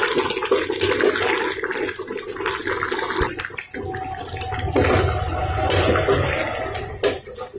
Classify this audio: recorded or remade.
recorded